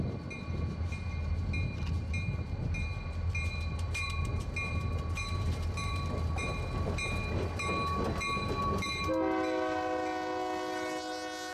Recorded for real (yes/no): yes